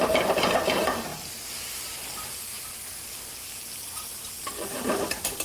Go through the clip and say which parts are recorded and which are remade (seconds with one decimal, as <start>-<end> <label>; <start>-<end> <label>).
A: 0.0-5.4 recorded